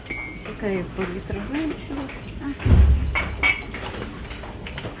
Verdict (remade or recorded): recorded